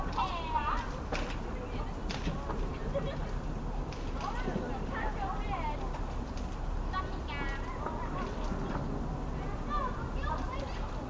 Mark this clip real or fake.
real